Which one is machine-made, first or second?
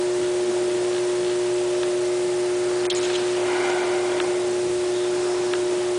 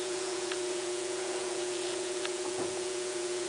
second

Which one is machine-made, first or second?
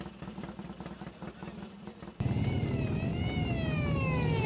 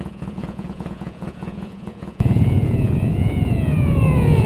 second